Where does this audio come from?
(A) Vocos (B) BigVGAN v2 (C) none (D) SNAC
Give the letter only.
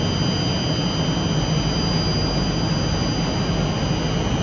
C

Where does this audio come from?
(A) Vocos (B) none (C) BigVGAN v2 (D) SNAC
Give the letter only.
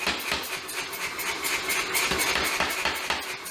B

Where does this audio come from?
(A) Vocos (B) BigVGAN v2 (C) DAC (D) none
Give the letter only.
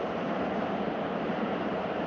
B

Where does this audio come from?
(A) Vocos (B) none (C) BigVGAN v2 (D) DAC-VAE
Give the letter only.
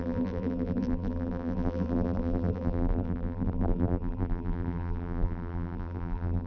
C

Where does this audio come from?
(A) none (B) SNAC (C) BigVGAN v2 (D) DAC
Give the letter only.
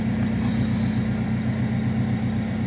A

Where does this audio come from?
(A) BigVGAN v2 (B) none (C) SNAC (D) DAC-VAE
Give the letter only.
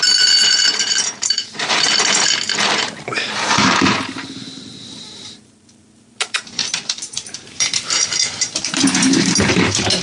A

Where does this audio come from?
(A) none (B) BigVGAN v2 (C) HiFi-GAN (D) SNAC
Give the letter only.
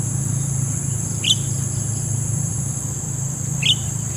B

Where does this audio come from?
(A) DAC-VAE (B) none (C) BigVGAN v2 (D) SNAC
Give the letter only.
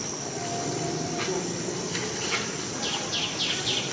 B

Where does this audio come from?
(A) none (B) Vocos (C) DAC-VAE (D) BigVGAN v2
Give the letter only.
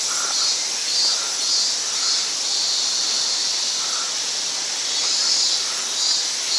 A